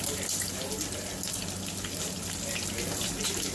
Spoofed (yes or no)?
no